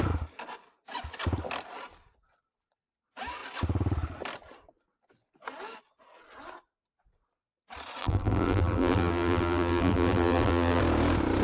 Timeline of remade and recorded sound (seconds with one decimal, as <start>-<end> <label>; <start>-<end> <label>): 0.0-8.0 recorded; 8.0-10.8 remade; 10.8-11.4 recorded